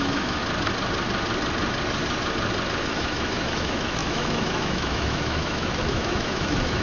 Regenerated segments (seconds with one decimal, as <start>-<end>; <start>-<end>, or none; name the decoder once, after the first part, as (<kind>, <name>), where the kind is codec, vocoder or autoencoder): 0.0-0.4 (autoencoder, DAC-VAE); 2.9-6.8